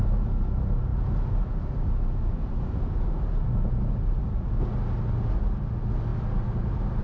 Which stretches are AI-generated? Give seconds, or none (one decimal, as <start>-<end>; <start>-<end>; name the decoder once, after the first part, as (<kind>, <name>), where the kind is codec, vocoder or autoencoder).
none